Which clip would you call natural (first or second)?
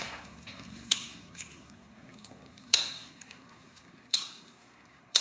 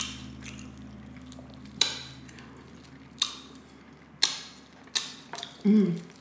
second